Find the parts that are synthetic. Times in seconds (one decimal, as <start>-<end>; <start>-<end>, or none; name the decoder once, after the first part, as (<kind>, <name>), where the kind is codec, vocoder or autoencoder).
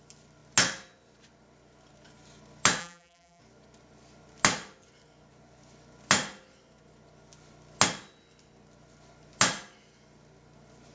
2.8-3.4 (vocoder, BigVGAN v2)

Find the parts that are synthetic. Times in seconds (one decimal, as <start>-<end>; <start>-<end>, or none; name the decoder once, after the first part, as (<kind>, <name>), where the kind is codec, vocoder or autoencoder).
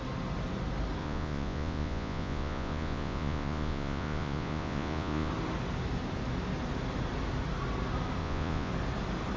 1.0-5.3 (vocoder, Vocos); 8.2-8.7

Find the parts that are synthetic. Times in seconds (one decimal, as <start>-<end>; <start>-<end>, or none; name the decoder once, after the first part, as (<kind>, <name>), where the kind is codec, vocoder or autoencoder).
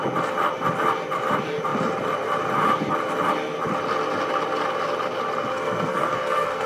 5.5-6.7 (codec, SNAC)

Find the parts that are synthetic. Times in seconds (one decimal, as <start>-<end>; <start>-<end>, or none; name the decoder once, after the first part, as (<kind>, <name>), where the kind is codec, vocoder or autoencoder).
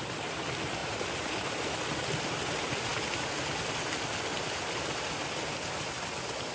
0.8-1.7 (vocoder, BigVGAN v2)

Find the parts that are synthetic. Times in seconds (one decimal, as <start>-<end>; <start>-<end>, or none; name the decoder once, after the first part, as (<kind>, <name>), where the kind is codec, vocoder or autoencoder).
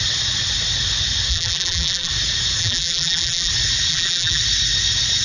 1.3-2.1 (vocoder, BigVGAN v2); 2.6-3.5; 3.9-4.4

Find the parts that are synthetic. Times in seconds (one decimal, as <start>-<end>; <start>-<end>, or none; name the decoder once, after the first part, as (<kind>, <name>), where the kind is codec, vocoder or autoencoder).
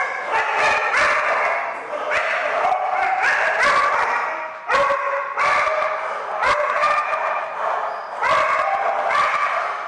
6.4-7.0 (vocoder, BigVGAN v2)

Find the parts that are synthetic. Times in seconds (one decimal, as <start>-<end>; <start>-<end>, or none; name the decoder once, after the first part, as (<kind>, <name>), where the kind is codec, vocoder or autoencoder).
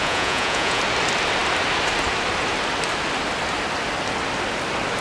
0.0-0.8 (vocoder, Vocos)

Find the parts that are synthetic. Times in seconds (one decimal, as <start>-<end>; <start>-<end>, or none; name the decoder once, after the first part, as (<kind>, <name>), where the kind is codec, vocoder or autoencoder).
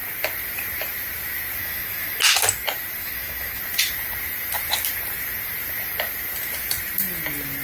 1.6-2.2 (autoencoder, DAC-VAE); 3.0-3.6